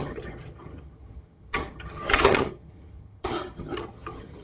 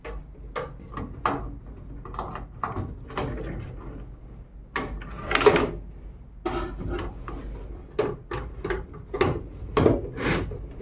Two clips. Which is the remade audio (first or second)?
first